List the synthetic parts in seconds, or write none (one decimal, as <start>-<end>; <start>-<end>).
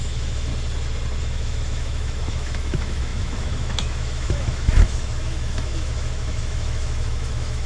0.0-0.5; 1.2-7.7